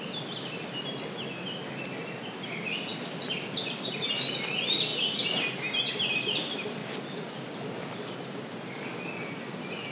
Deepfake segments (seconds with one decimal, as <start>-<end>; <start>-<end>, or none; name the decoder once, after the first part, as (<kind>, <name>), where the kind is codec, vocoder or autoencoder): none